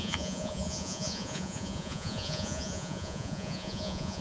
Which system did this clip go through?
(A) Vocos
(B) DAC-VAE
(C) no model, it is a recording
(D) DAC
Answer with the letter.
A